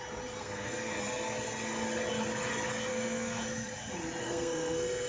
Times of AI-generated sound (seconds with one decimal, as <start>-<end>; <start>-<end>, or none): 0.4-1.0; 2.9-3.4; 4.2-5.1